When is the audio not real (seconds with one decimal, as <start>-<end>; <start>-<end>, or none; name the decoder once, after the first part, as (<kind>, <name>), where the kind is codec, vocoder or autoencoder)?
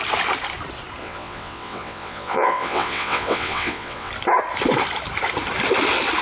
1.0-4.1 (vocoder, WaveNeXt)